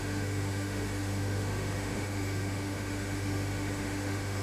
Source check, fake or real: fake